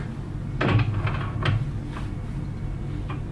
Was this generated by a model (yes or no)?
no